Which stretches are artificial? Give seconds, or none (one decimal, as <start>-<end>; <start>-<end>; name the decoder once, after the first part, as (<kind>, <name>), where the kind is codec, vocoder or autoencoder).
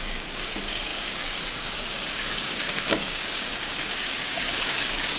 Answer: 0.0-5.2 (codec, DAC)